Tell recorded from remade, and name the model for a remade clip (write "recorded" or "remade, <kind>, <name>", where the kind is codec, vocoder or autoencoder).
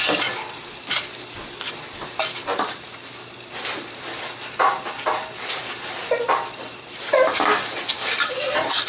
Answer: recorded